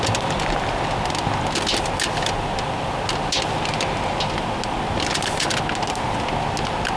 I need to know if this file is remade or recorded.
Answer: recorded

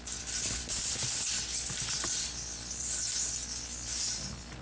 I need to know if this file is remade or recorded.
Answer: recorded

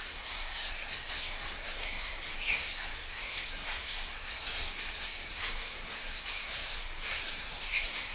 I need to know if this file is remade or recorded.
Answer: remade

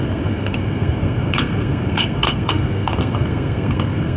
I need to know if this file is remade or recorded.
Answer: remade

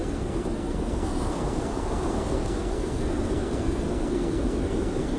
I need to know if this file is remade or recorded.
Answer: remade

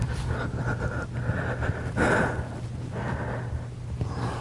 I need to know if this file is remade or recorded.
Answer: recorded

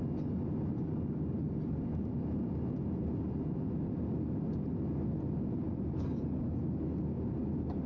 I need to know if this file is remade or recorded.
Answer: recorded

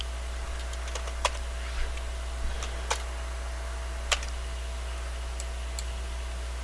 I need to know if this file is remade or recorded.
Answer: recorded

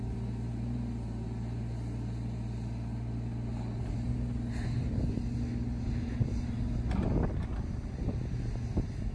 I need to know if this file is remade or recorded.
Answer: recorded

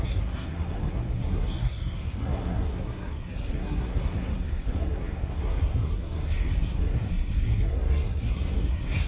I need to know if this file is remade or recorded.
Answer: remade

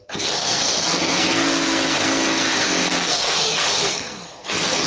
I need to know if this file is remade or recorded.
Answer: remade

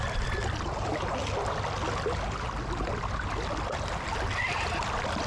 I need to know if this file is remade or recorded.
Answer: recorded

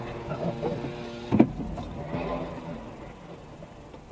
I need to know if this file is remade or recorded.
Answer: recorded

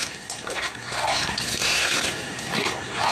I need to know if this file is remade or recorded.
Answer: remade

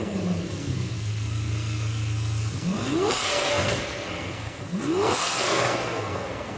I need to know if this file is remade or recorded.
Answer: remade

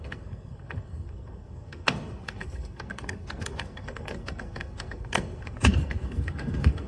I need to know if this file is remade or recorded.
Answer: remade